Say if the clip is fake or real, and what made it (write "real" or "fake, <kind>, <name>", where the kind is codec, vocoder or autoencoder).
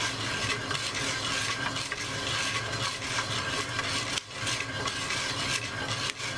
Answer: real